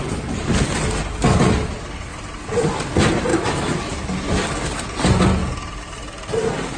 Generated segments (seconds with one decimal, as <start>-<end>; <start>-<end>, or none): 3.3-3.9